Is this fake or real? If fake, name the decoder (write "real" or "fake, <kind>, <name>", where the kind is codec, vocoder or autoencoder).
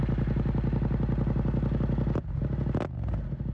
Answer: real